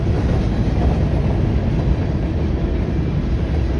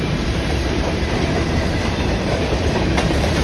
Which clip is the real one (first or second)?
first